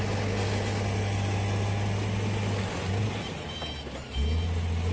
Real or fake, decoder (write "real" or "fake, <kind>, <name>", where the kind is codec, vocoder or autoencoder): real